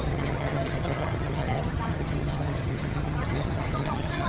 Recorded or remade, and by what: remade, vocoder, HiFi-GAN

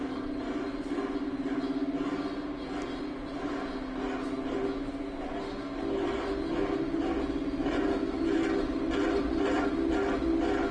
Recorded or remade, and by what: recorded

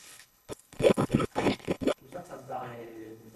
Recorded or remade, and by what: remade, codec, HILCodec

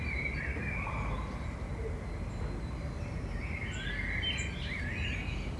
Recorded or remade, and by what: recorded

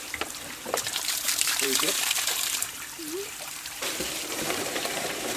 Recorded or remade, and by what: remade, vocoder, BigVGAN v2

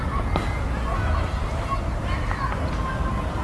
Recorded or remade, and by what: recorded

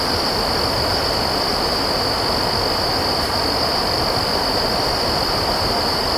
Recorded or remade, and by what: recorded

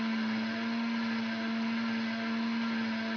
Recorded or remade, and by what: recorded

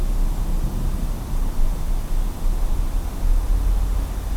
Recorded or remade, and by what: recorded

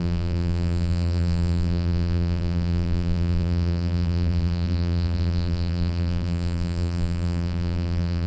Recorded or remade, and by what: remade, vocoder, BigVGAN v2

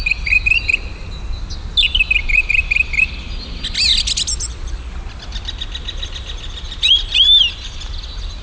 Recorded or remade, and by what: recorded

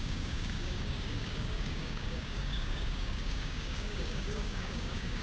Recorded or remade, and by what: remade, codec, DAC